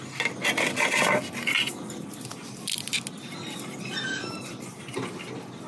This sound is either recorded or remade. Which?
recorded